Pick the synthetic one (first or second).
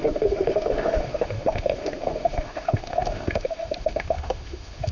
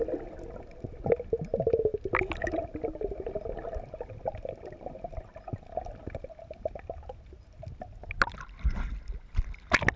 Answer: first